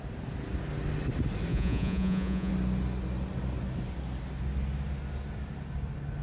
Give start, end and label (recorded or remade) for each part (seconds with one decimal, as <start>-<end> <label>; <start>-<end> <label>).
0.0-1.5 recorded; 1.5-2.5 remade; 2.5-6.2 recorded

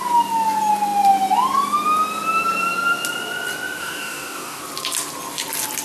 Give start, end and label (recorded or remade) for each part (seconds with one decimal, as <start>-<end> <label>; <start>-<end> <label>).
0.0-3.8 recorded; 3.8-4.6 remade; 4.6-5.8 recorded

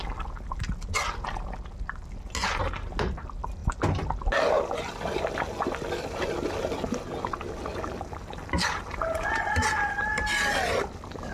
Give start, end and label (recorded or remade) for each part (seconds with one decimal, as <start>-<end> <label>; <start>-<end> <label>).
0.0-11.3 recorded

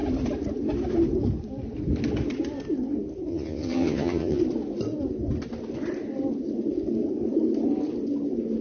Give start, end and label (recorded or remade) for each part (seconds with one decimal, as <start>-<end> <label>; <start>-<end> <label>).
0.0-3.3 recorded; 3.3-4.4 remade; 4.4-8.6 recorded

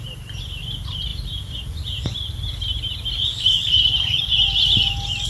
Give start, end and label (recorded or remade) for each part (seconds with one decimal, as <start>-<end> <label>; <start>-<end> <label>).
0.0-1.1 recorded; 1.1-4.3 remade; 4.3-5.3 recorded

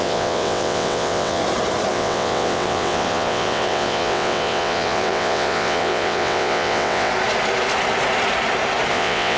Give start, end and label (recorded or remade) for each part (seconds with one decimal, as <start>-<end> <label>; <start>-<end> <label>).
0.0-1.4 remade; 1.4-1.9 recorded; 1.9-7.1 remade; 7.1-8.9 recorded; 8.9-9.4 remade

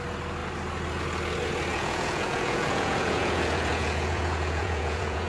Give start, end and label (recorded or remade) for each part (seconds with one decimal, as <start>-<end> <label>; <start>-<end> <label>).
0.0-1.7 recorded; 1.7-5.3 remade

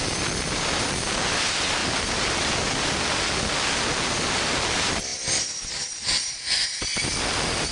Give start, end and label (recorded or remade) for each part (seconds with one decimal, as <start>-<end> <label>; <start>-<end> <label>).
0.0-1.8 recorded; 1.8-2.9 remade; 2.9-5.1 recorded; 5.1-5.8 remade; 5.8-6.9 recorded; 6.9-7.7 remade